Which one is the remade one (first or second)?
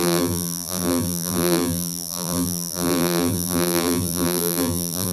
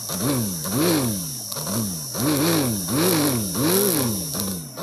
first